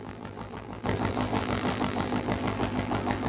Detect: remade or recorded remade